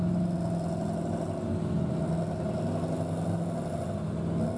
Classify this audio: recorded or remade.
recorded